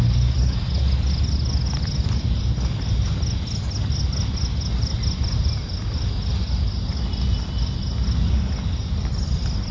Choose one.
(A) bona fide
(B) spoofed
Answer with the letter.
A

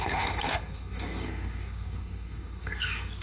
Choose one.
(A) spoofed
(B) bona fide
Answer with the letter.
A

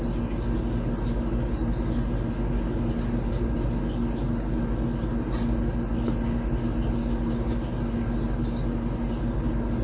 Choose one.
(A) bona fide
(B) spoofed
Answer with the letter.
A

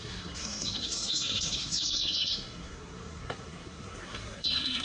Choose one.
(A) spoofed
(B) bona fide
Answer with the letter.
A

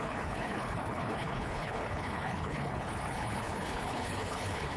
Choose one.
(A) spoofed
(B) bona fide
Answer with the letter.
A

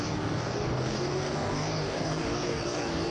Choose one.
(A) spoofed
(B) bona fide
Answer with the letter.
A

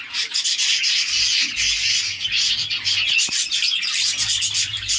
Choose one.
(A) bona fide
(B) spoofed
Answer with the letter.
A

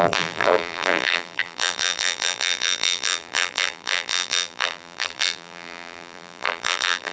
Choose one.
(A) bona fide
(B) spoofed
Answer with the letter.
B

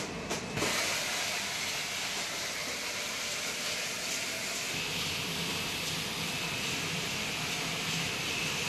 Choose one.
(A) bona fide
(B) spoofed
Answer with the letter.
B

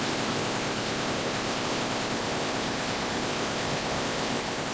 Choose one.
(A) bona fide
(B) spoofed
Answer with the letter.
B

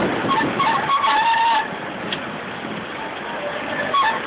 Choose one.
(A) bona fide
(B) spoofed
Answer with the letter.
A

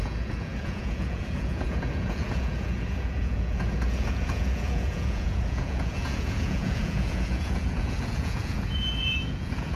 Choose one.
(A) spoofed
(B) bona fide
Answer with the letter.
A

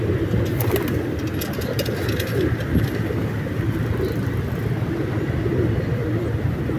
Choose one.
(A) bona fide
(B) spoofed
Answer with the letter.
A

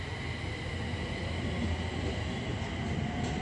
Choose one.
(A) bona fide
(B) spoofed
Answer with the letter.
A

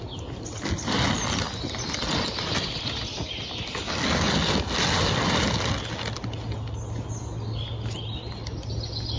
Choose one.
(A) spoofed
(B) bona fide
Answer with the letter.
B